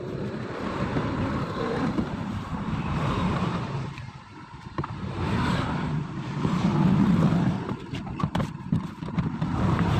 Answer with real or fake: fake